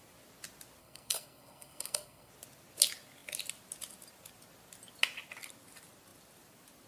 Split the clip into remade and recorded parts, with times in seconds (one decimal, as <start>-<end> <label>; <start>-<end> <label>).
0.0-0.8 recorded; 0.8-2.3 remade; 2.3-6.9 recorded